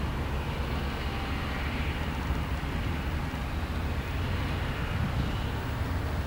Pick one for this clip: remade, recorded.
recorded